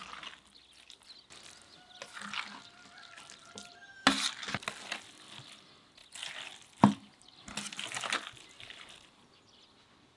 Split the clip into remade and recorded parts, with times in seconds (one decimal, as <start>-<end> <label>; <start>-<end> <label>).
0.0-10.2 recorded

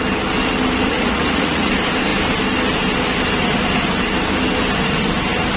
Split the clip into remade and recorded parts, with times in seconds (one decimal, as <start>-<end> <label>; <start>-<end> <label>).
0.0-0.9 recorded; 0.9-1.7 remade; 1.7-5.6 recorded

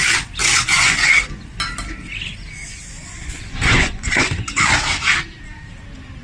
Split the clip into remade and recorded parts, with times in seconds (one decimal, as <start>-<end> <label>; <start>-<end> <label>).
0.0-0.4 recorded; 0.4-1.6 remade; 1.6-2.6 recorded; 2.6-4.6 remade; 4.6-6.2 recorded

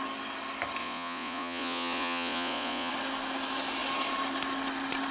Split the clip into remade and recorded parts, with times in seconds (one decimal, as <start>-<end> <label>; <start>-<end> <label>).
0.0-0.8 recorded; 0.8-2.9 remade; 2.9-5.1 recorded

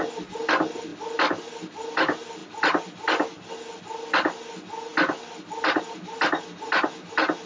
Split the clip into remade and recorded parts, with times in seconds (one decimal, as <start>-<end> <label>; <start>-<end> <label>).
0.0-7.5 recorded

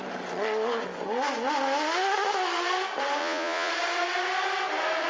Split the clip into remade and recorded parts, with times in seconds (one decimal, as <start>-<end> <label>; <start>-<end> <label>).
0.0-3.2 recorded; 3.2-3.7 remade; 3.7-5.1 recorded

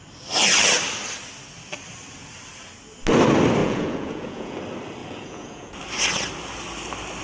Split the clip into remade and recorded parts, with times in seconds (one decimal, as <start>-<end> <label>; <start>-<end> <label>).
0.0-3.6 recorded; 3.6-4.6 remade; 4.6-5.0 recorded; 5.0-5.8 remade; 5.8-7.2 recorded

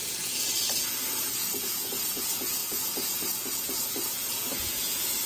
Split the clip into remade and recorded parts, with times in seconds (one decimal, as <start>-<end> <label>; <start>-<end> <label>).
0.0-5.3 remade